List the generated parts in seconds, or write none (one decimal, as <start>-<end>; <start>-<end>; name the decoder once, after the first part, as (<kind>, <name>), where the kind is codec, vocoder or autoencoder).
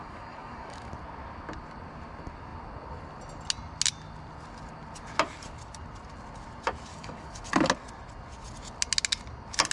0.0-0.9 (codec, DAC); 6.9-7.4